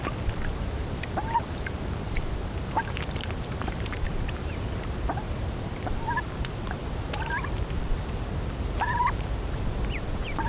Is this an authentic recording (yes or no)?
no